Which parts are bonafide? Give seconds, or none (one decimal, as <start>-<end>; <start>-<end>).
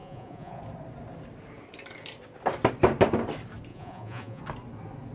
0.6-3.7; 4.4-5.1